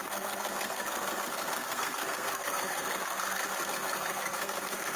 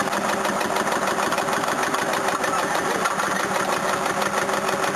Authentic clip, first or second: second